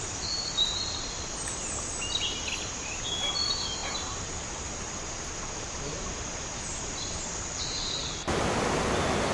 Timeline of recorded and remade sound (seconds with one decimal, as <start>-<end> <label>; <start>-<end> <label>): 0.0-9.3 recorded

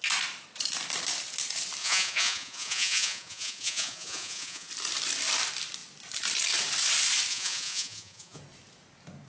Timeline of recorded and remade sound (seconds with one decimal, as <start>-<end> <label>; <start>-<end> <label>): 0.0-1.8 recorded; 1.8-4.7 remade; 4.7-7.3 recorded; 7.3-8.4 remade; 8.4-9.3 recorded

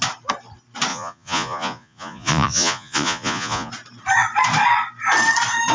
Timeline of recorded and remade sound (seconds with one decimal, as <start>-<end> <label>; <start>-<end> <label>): 0.0-0.9 recorded; 0.9-3.7 remade; 3.7-5.7 recorded

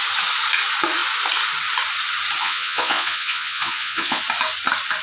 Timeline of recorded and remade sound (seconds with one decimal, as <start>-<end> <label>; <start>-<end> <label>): 0.0-2.4 recorded; 2.4-4.2 remade; 4.2-5.0 recorded

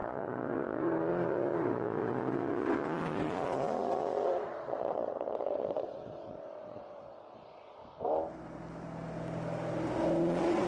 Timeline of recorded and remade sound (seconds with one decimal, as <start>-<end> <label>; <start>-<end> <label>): 0.0-7.8 remade; 7.8-10.2 recorded; 10.2-10.7 remade

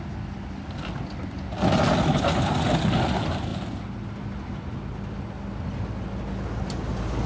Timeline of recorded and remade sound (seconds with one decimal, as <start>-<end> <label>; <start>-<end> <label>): 0.0-7.3 recorded

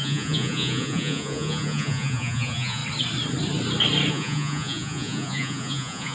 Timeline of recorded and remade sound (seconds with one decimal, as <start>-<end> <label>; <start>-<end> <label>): 0.0-2.8 remade; 2.8-4.1 recorded; 4.1-6.1 remade